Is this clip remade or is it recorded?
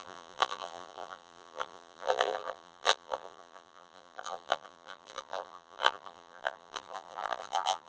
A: remade